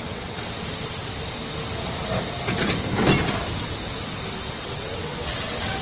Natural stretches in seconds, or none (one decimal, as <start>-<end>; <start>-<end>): 1.0-4.5